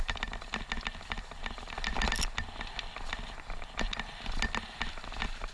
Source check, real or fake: real